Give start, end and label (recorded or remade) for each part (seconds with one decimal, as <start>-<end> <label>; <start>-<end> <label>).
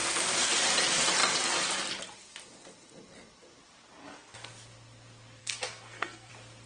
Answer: 0.0-0.5 remade; 0.5-4.0 recorded; 4.0-4.5 remade; 4.5-5.4 recorded; 5.4-6.3 remade; 6.3-6.7 recorded